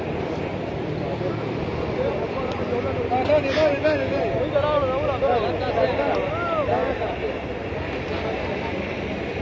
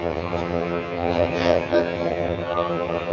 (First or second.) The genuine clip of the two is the first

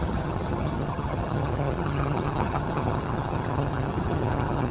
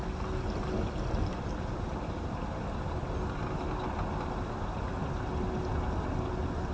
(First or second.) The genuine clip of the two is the second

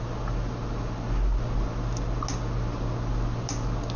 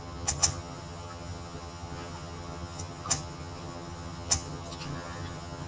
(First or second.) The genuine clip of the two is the first